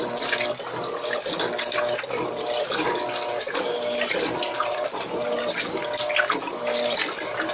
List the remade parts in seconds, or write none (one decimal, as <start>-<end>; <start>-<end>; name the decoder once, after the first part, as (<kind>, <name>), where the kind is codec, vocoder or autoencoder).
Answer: 4.5-5.4 (vocoder, BigVGAN v2)